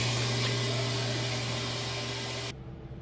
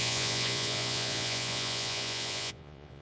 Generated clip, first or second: second